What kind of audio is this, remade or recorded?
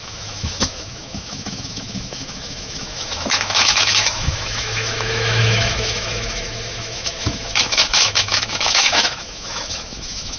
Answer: remade